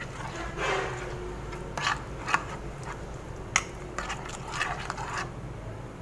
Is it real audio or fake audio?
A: real